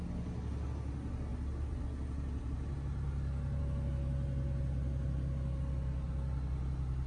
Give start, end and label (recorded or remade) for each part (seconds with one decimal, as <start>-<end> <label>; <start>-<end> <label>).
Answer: 0.0-7.1 recorded